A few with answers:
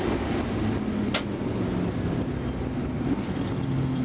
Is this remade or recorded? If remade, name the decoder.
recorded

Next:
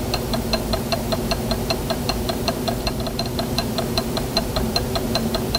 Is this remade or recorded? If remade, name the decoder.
remade, vocoder, BigVGAN v2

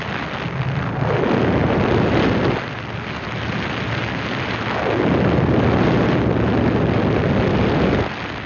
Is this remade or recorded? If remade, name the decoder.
recorded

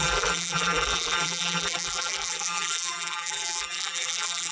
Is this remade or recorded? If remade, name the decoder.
remade, vocoder, BigVGAN v2